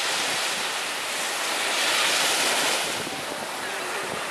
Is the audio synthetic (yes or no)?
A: no